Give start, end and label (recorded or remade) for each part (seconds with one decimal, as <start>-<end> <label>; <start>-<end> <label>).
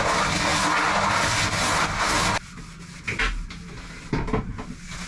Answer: 0.0-5.1 recorded